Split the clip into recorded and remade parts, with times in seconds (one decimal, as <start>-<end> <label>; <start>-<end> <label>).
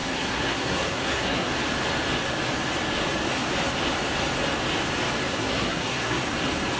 0.0-1.5 remade; 1.5-5.3 recorded; 5.3-6.2 remade; 6.2-6.8 recorded